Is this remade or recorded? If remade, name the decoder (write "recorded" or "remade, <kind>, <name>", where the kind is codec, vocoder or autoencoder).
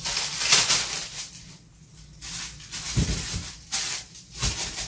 recorded